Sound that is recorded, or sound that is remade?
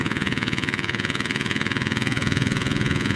remade